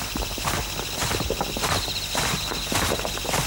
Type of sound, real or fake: real